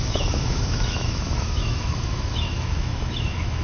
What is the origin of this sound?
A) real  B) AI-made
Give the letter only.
B